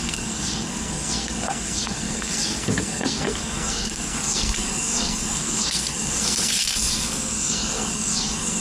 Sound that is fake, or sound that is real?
fake